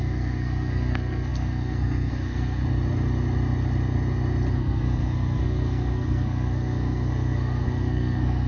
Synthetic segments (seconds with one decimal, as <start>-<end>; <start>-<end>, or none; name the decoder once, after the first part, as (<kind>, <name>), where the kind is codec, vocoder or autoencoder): 0.0-2.6 (codec, SNAC); 4.5-8.5